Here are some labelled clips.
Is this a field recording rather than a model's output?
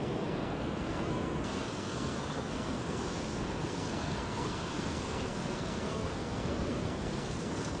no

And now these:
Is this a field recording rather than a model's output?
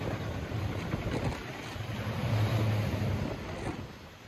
yes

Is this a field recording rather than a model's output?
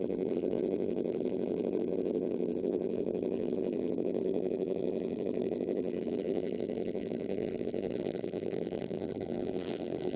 no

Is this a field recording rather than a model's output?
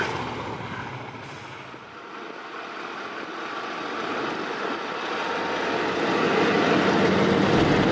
yes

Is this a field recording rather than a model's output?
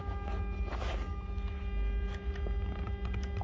yes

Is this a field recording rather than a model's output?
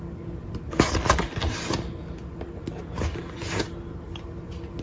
yes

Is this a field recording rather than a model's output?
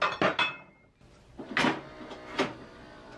yes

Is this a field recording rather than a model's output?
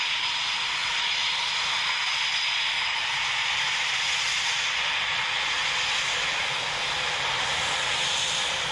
yes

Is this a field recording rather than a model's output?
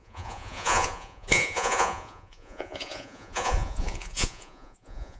no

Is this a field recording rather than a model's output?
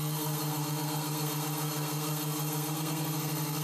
no